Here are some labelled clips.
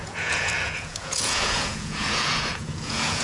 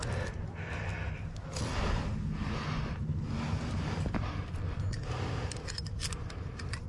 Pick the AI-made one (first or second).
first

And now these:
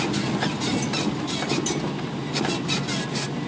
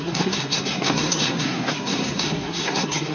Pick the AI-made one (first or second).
second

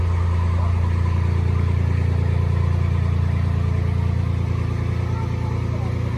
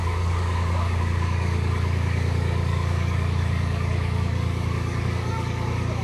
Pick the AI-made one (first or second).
second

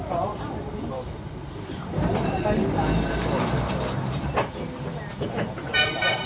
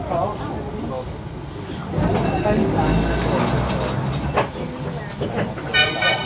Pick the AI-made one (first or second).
first